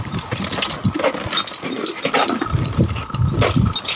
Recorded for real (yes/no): yes